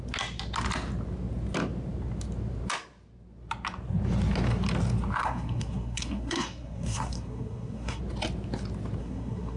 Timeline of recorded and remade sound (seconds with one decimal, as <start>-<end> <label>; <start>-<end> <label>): 0.0-5.2 recorded; 5.2-8.0 remade; 8.0-9.0 recorded; 9.0-9.6 remade